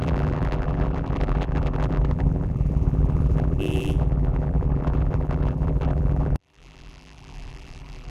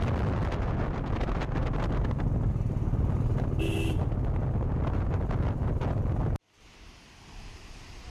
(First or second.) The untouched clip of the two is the second